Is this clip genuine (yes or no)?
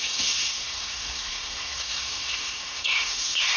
no